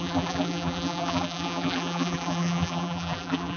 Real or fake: fake